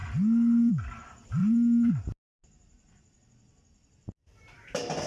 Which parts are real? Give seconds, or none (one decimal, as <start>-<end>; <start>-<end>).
0.0-1.4; 1.9-5.1